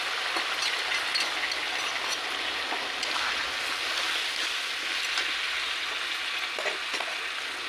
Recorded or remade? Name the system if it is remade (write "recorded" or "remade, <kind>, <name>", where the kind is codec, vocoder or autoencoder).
recorded